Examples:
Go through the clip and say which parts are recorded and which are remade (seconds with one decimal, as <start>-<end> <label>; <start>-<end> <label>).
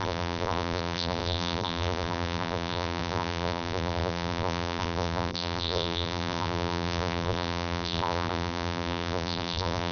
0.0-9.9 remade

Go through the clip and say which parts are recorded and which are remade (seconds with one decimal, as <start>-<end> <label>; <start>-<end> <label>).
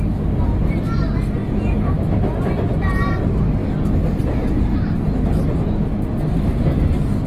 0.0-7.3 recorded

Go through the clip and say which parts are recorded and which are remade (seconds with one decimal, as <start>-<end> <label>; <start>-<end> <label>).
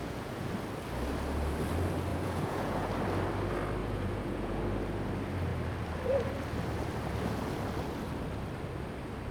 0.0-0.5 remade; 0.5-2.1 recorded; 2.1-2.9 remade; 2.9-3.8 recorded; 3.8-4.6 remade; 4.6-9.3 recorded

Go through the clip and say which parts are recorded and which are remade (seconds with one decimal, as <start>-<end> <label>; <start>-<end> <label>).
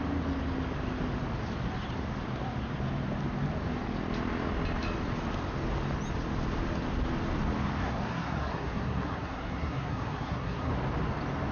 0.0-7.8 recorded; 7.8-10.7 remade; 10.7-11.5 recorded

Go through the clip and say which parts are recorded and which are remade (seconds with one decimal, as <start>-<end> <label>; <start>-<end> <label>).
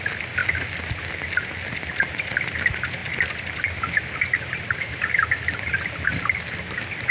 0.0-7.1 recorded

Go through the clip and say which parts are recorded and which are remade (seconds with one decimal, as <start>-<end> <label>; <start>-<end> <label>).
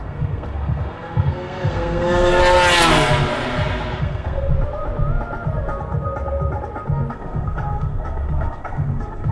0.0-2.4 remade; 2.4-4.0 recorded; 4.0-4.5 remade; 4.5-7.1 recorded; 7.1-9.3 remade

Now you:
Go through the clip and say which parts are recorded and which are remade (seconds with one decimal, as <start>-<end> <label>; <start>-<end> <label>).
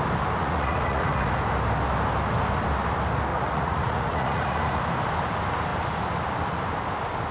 0.0-0.4 recorded; 0.4-1.3 remade; 1.3-3.3 recorded; 3.3-4.8 remade; 4.8-7.3 recorded